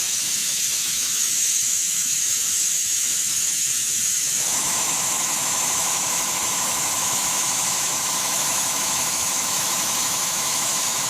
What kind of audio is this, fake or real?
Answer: fake